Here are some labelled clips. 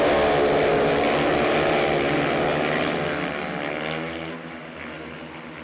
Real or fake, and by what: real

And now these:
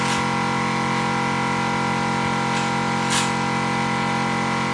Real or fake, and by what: real